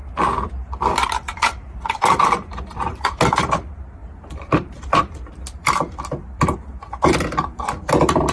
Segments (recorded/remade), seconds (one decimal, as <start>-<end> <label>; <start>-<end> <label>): 0.0-3.5 remade; 3.5-4.0 recorded; 4.0-5.7 remade; 5.7-6.7 recorded; 6.7-7.6 remade; 7.6-8.3 recorded